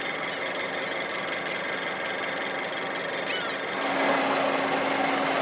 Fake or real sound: real